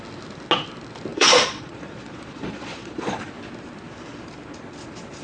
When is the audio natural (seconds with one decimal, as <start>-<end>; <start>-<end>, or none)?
0.0-1.1; 3.3-5.2